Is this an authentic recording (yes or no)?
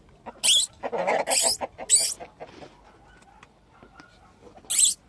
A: yes